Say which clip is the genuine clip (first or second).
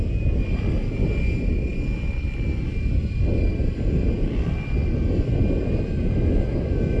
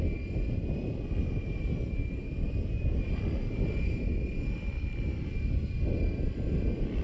first